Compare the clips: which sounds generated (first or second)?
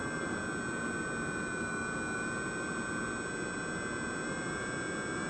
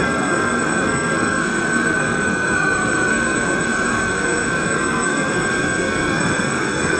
second